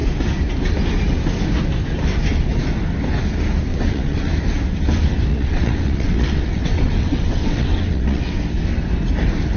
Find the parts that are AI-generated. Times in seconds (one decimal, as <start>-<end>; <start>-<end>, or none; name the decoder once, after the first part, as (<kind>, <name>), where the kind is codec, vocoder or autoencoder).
3.7-4.3 (vocoder, WaveNeXt); 5.3-8.4